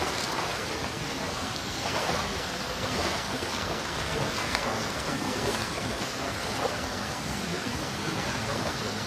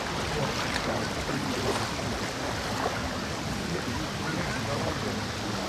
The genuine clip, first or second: second